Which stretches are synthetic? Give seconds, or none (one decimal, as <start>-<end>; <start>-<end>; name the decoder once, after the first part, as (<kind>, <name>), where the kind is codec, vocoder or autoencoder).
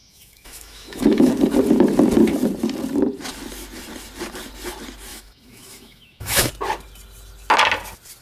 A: 0.0-1.3 (autoencoder, DAC-VAE); 5.1-6.5